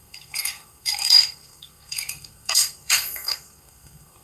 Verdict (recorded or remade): remade